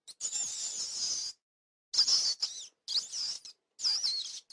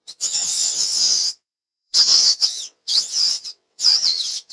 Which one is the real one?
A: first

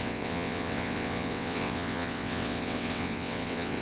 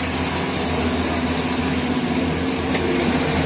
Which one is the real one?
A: second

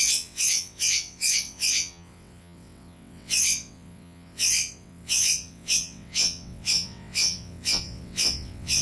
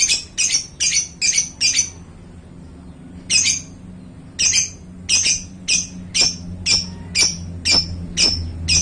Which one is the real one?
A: second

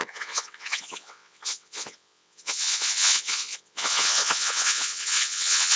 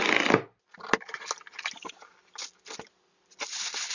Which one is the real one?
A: second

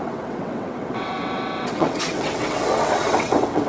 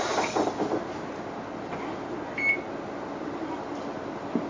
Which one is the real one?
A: second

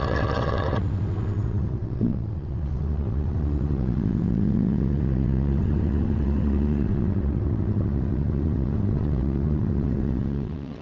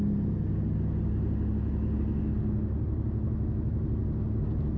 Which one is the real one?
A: second